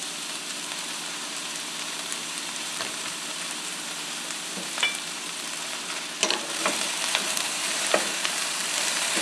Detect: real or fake fake